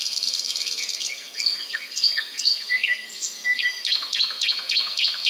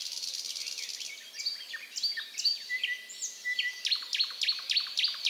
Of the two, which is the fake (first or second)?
first